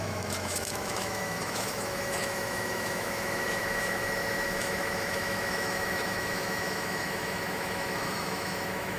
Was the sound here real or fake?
fake